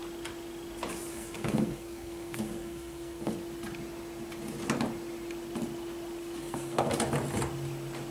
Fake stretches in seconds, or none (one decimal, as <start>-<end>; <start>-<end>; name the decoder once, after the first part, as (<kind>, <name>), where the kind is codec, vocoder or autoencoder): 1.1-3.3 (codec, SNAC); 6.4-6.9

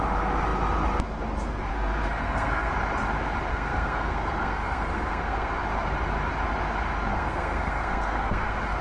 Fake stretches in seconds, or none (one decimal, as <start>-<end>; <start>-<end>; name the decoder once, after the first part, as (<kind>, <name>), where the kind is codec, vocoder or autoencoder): 1.7-2.7 (codec, SNAC); 3.5-5.5; 7.1-8.8

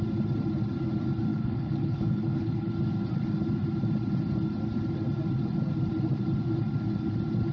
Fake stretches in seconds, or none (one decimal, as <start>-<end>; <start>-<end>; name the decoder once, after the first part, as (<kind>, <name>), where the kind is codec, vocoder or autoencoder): 1.3-2.7 (codec, HILCodec)

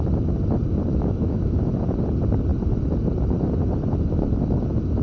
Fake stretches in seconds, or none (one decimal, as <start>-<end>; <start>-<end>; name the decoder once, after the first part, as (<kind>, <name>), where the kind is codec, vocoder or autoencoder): 0.9-1.7 (autoencoder, DAC-VAE)

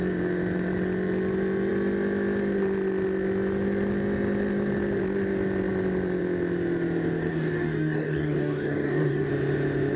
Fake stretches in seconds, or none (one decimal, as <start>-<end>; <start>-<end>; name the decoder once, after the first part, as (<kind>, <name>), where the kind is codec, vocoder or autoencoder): 7.3-9.3 (codec, DAC)

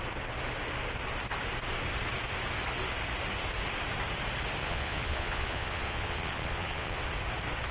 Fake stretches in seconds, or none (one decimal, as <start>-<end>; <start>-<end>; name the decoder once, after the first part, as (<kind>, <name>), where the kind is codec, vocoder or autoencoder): 4.6-7.0 (vocoder, Vocos)

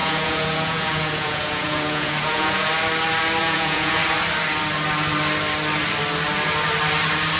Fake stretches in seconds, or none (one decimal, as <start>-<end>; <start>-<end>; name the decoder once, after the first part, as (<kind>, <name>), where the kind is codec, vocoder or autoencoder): 0.0-2.7 (vocoder, Vocos); 3.4-4.0

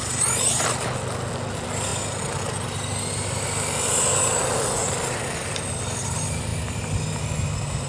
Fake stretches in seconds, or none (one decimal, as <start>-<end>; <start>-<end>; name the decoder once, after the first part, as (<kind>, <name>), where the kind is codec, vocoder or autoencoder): none